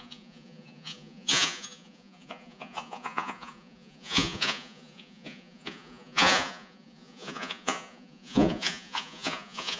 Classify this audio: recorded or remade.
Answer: remade